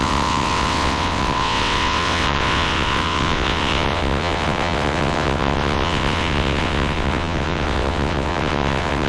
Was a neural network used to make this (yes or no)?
yes